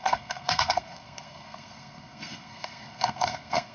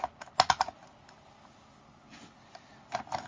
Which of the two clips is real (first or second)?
second